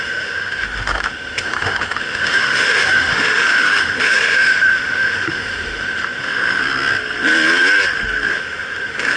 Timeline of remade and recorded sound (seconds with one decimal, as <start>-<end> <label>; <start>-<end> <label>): 0.0-6.6 remade; 6.6-8.3 recorded; 8.3-9.2 remade